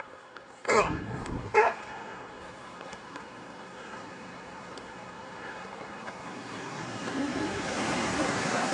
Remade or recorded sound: remade